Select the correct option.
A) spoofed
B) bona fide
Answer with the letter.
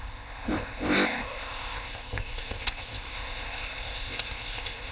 A